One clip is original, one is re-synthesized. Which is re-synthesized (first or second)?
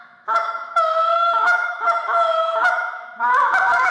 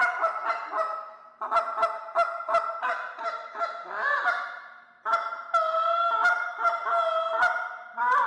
first